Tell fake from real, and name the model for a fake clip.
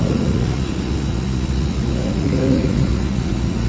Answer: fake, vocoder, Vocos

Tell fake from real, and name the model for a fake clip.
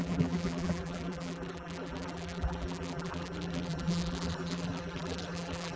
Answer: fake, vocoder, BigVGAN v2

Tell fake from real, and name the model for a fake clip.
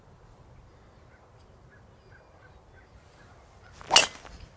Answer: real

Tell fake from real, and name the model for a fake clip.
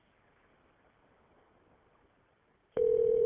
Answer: fake, vocoder, BigVGAN v2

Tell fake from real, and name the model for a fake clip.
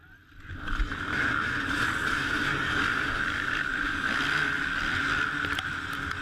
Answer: real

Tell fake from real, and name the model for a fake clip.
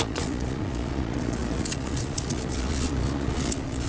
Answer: fake, vocoder, Vocos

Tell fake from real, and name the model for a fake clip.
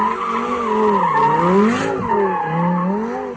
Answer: real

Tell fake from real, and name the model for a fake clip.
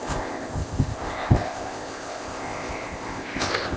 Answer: fake, codec, ZipCodec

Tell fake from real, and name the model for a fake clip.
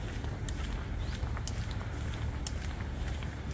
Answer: real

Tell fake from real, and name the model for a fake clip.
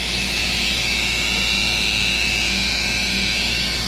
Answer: fake, autoencoder, DAC-VAE